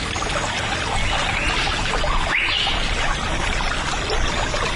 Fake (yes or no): no